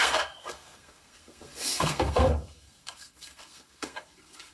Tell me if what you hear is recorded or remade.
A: remade